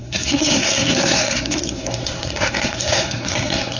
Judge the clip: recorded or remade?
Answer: remade